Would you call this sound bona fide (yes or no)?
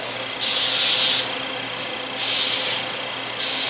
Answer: yes